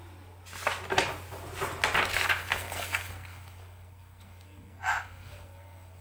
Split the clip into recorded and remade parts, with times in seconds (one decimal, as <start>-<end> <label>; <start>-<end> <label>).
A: 0.0-2.4 recorded; 2.4-6.0 remade